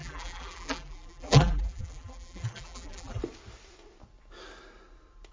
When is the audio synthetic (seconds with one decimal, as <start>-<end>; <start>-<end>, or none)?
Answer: 0.0-3.2

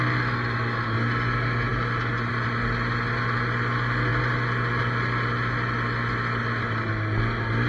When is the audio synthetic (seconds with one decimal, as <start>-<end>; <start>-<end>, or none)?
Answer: none

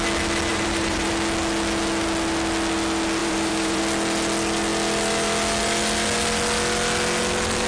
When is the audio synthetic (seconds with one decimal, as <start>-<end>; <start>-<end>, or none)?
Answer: 0.5-1.1; 3.2-3.8

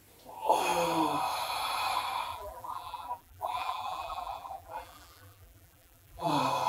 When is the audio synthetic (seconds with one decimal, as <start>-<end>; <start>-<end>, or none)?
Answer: 2.3-6.3

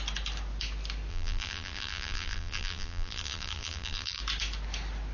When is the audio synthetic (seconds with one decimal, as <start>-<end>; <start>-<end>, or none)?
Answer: 1.1-4.2

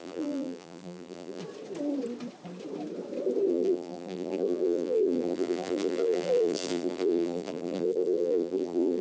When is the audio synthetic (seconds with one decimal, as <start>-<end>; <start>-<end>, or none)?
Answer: 0.0-1.4; 3.5-9.0